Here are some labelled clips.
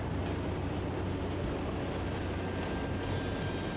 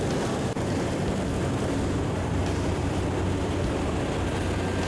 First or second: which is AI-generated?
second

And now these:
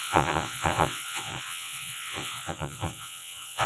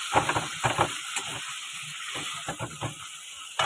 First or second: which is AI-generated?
first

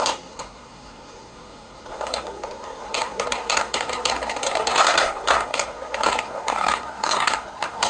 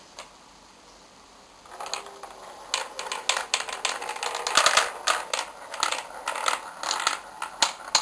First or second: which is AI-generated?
first